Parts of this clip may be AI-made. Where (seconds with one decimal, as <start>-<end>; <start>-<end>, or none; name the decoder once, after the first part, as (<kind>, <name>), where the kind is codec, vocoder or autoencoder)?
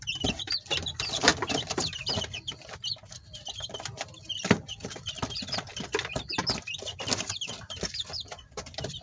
0.0-9.0 (vocoder, BigVGAN v2)